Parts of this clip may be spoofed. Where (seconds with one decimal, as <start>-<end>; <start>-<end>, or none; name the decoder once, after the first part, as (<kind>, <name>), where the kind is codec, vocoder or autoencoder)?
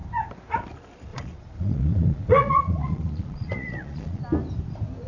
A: 1.1-4.2 (vocoder, Vocos)